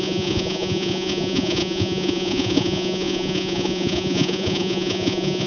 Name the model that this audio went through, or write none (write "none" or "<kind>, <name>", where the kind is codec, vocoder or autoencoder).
vocoder, Vocos